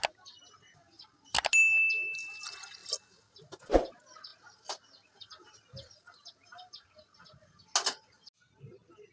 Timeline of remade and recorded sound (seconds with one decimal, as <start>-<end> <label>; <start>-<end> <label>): 0.0-9.1 recorded